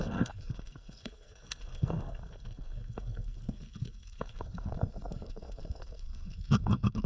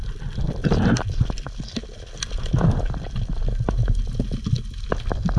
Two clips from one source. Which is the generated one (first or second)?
first